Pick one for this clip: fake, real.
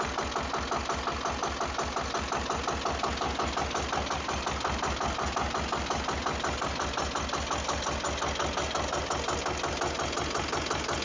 real